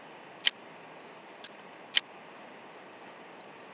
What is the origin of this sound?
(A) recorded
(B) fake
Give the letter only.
A